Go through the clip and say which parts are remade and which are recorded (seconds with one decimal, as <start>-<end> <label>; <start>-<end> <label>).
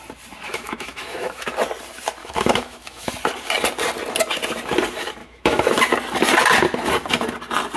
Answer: 0.0-0.5 recorded; 0.5-1.5 remade; 1.5-2.2 recorded; 2.2-3.1 remade; 3.1-5.2 recorded; 5.2-5.8 remade; 5.8-7.8 recorded